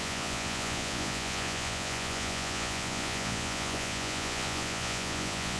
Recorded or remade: remade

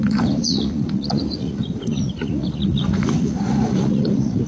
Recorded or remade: remade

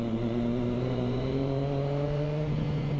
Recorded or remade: remade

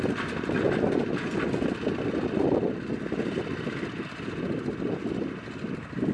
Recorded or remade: recorded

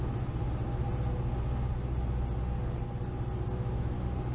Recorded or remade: recorded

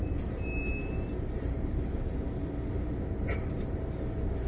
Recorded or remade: recorded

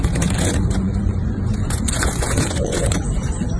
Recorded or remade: remade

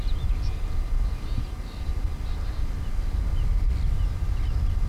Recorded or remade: recorded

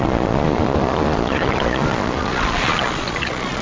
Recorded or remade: remade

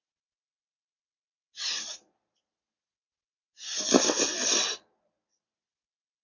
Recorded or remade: recorded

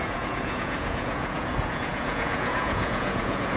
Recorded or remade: remade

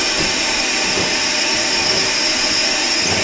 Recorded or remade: recorded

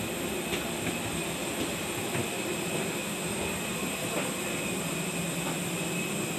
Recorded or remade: recorded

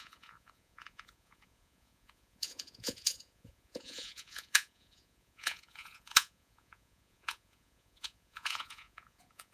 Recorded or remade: remade